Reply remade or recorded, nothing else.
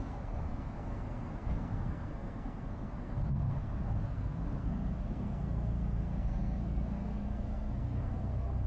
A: remade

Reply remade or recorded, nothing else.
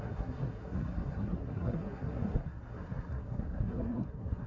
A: remade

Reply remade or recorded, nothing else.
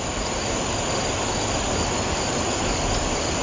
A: recorded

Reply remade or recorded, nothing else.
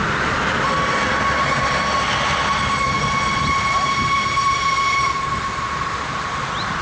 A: recorded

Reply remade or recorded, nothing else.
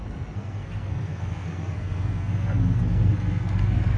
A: remade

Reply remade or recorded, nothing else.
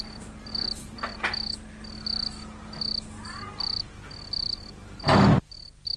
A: recorded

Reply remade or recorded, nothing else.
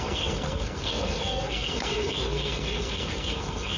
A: remade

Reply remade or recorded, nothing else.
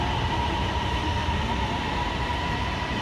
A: recorded